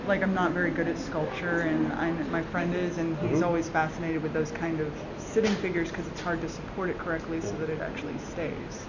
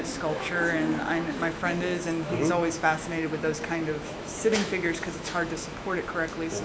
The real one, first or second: first